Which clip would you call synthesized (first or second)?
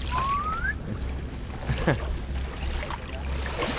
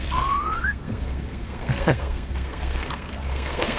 second